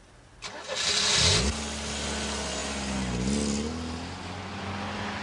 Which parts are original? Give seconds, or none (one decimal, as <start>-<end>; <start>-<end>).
0.0-5.2